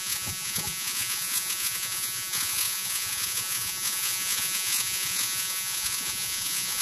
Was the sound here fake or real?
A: fake